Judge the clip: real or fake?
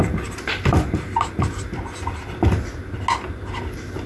real